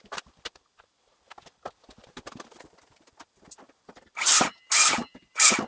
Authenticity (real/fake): real